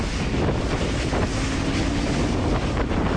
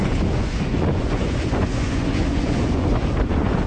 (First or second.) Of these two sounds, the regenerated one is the second